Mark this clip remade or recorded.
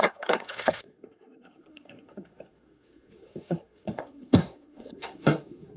remade